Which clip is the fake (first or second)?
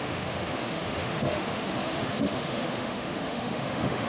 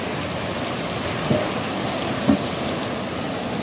first